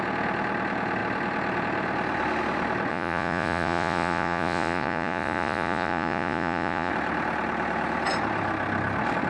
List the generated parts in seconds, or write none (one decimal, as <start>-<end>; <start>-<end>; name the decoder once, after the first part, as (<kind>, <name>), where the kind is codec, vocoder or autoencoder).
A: 2.9-6.9 (vocoder, Vocos)